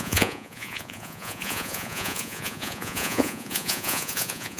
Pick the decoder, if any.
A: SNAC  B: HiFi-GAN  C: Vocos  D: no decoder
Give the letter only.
C